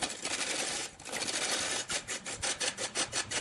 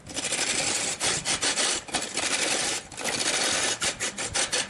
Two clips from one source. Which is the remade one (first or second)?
first